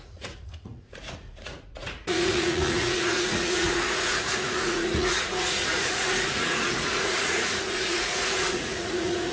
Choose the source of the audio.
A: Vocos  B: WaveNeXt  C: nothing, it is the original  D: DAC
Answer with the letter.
A